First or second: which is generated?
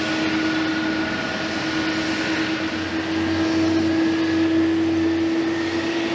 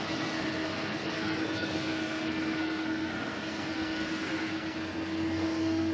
second